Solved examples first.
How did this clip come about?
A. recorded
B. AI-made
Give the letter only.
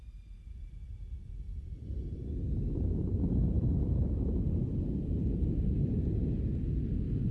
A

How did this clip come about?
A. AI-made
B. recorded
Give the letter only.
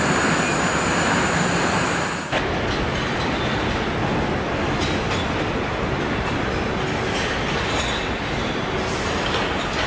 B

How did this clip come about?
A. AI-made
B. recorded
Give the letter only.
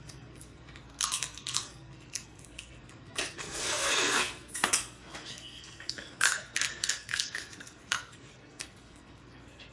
A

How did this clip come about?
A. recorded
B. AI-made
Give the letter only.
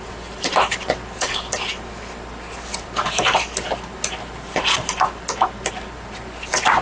A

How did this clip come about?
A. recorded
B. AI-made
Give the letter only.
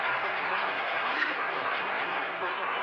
B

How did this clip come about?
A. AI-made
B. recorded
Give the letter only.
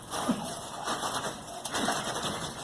A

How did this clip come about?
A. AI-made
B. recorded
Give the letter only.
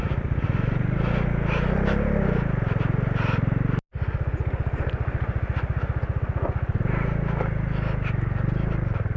B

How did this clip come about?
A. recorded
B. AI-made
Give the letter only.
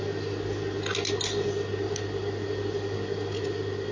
A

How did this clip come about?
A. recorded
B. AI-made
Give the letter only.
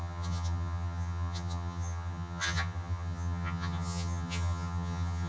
B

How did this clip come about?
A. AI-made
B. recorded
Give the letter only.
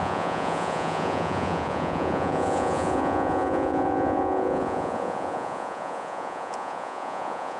A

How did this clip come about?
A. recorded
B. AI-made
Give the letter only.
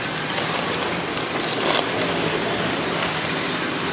A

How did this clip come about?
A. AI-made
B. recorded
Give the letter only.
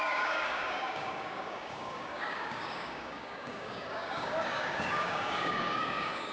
A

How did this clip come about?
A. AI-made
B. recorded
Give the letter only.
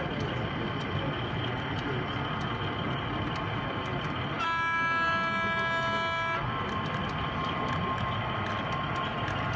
B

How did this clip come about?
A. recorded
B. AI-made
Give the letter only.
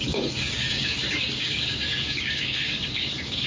B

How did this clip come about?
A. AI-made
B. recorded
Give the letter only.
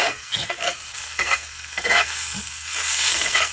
A